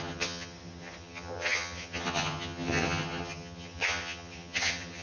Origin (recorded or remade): remade